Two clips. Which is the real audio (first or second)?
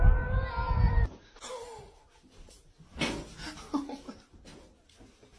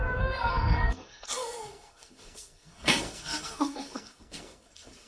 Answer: first